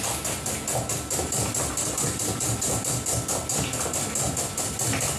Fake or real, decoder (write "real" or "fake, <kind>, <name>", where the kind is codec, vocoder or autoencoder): real